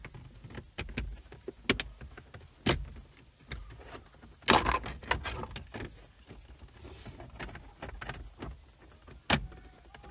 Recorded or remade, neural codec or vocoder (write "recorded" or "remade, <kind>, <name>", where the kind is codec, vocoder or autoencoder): recorded